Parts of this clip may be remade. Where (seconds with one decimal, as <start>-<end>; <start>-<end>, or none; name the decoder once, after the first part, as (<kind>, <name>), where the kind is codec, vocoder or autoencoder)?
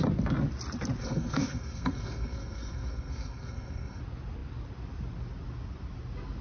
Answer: 1.0-4.0 (codec, SNAC)